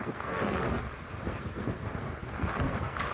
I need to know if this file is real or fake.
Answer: fake